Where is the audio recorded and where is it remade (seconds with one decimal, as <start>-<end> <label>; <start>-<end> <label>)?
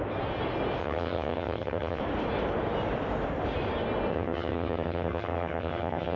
0.0-0.8 recorded; 0.8-2.0 remade; 2.0-4.1 recorded; 4.1-6.2 remade